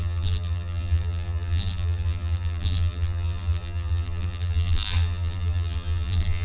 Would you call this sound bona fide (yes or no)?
no